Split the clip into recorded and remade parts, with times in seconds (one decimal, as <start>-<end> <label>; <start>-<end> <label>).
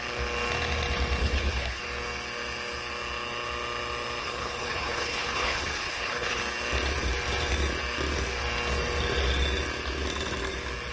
0.0-1.2 recorded; 1.2-1.8 remade; 1.8-4.2 recorded; 4.2-6.4 remade; 6.4-10.9 recorded